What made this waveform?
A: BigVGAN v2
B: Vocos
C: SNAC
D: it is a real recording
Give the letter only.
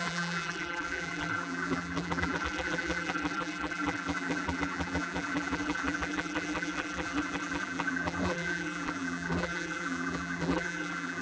A